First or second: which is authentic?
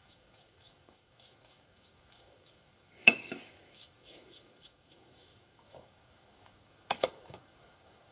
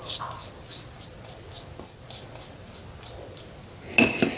second